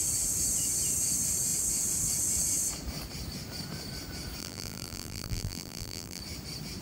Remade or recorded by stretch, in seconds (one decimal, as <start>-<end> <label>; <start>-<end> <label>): 0.0-4.4 recorded; 4.4-6.2 remade; 6.2-6.8 recorded